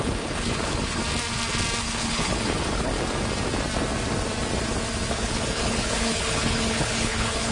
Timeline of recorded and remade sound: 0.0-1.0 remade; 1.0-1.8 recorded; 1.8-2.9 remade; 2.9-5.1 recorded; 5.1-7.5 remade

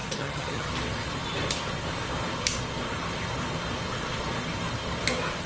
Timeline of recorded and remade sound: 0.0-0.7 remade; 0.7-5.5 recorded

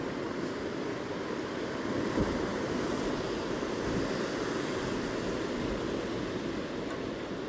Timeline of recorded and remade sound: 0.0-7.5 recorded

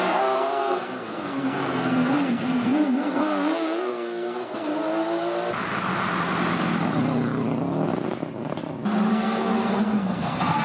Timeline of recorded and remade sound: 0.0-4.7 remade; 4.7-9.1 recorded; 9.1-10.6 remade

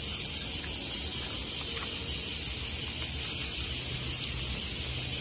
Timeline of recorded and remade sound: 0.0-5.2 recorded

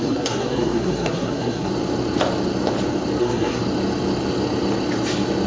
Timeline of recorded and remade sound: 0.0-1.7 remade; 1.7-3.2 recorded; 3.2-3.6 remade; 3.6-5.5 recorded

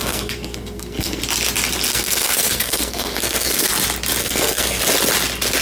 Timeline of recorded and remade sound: 0.0-1.2 remade; 1.2-1.9 recorded; 1.9-3.7 remade; 3.7-4.2 recorded; 4.2-4.8 remade; 4.8-5.6 recorded